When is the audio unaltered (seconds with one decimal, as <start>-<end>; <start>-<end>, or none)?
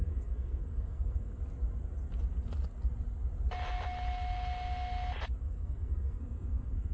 1.4-5.4